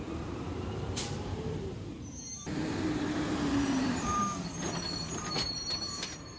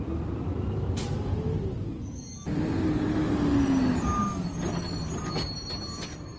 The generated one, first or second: first